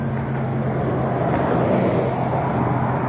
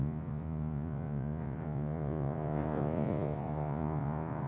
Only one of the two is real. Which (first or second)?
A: first